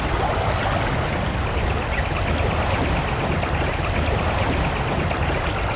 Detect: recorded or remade recorded